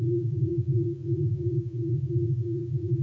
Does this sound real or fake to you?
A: fake